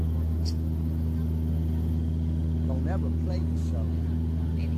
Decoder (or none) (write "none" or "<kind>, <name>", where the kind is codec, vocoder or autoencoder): none